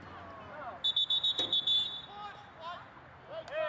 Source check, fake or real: real